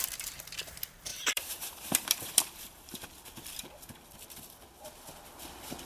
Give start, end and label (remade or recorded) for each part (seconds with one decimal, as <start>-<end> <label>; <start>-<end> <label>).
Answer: 0.0-1.1 recorded; 1.1-3.0 remade; 3.0-5.9 recorded